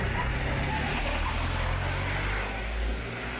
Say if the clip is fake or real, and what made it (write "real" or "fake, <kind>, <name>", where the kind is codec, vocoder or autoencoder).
real